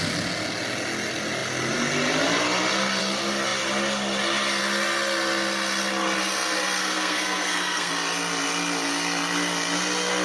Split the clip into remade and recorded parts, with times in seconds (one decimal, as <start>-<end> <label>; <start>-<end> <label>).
0.0-6.8 recorded; 6.8-7.9 remade; 7.9-10.2 recorded